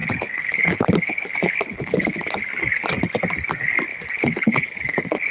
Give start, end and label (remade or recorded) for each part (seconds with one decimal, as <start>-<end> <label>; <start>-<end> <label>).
0.0-2.5 remade; 2.5-3.9 recorded; 3.9-5.3 remade